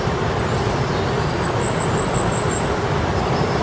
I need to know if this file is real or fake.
real